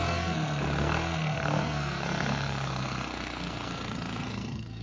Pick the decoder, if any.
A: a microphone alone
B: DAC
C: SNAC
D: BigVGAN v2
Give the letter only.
C